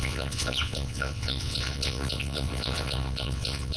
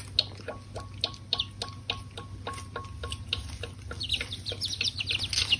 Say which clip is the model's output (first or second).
first